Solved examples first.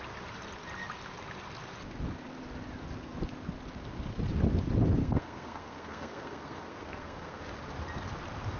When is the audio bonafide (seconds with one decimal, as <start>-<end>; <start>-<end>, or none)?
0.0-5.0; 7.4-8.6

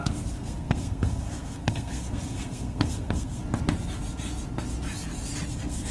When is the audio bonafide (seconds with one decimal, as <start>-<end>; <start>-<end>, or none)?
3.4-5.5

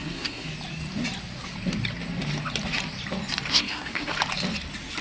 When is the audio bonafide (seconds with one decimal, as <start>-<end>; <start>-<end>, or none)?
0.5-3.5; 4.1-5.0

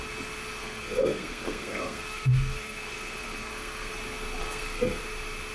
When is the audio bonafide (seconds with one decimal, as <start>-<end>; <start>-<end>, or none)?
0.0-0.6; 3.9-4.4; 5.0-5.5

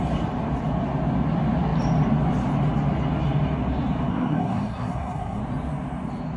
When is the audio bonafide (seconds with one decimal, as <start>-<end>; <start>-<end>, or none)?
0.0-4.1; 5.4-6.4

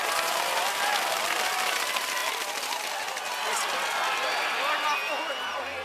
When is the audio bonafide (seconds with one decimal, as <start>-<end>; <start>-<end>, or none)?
0.0-5.8